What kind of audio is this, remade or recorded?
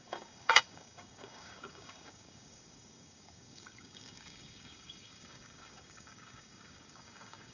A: remade